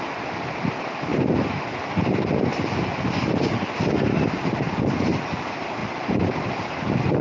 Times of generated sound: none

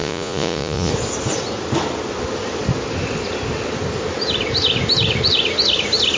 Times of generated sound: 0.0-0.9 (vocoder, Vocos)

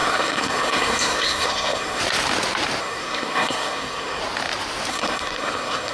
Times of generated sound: 0.0-2.0 (codec, SNAC); 2.8-4.2; 4.9-5.9

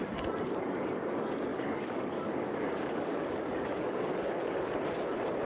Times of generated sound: 1.5-4.7 (codec, DAC)

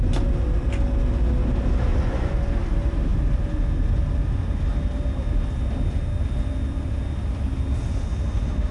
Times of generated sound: 1.9-2.5 (vocoder, Vocos)